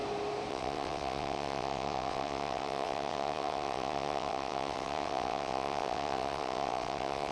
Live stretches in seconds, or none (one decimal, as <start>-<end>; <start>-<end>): 0.0-0.5